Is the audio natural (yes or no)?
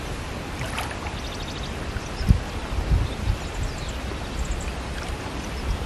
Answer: yes